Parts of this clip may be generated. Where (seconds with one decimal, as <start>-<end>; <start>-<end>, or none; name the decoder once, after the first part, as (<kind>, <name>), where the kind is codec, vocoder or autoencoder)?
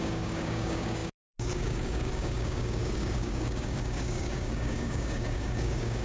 0.0-6.0 (codec, DAC)